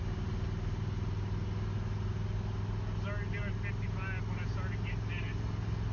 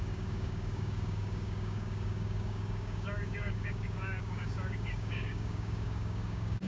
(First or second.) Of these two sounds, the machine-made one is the second